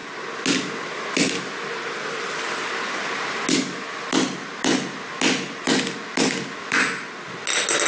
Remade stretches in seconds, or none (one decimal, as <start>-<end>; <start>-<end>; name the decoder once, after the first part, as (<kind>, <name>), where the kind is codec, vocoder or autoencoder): none